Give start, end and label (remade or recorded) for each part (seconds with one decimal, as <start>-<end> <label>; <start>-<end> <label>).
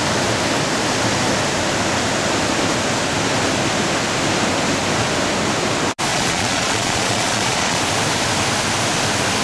0.0-6.1 recorded; 6.1-7.8 remade; 7.8-9.4 recorded